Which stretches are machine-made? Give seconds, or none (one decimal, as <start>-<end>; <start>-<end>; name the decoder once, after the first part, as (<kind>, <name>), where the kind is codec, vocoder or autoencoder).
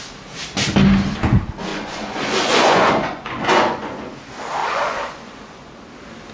1.7-4.1 (vocoder, Vocos); 4.6-5.7